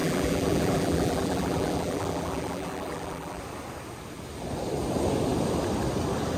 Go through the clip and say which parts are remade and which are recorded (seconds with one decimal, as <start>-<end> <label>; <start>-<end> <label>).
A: 0.0-3.4 remade; 3.4-6.4 recorded